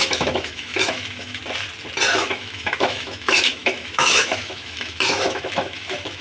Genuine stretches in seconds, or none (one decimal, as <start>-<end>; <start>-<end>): 1.4-2.2